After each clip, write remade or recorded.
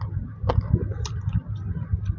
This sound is recorded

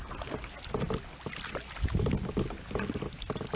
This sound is recorded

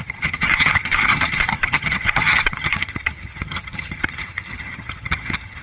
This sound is remade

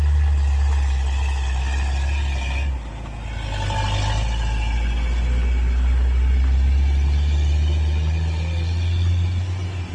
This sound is recorded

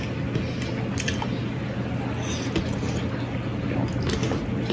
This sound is recorded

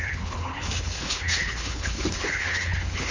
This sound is remade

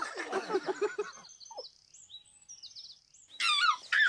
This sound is recorded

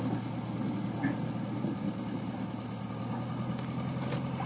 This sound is recorded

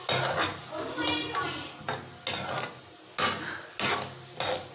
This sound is recorded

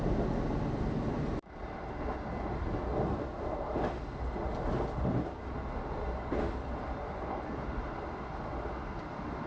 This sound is recorded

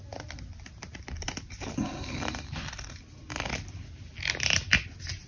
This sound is recorded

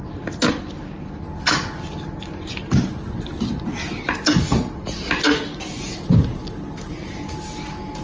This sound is recorded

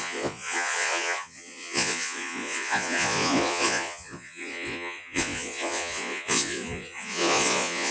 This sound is remade